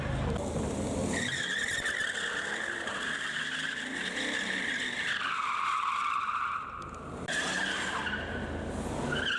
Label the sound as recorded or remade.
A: recorded